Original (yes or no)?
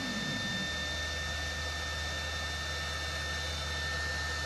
yes